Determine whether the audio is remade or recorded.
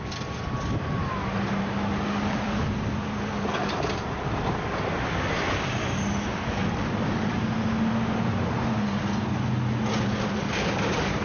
recorded